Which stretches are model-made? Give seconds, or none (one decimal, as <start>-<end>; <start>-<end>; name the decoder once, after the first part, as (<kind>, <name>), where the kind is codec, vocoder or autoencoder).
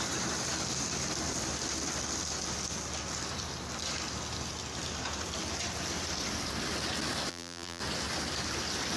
7.3-7.8 (vocoder, BigVGAN v2)